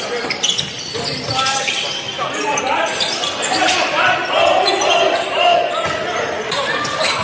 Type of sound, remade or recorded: recorded